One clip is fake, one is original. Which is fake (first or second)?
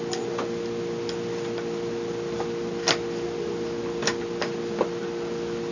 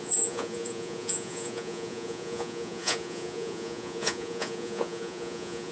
second